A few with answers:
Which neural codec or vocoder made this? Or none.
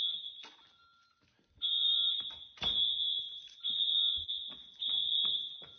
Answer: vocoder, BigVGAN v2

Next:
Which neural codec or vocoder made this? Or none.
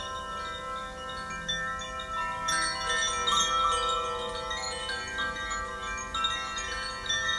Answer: none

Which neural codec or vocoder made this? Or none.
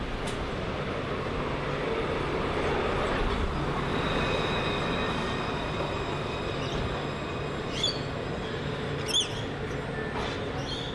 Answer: none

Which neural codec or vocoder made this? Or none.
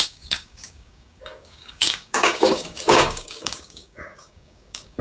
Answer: codec, DAC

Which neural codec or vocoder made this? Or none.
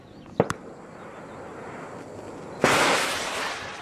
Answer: vocoder, BigVGAN v2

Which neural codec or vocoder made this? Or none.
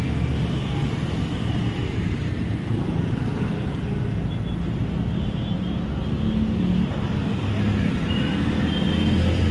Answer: none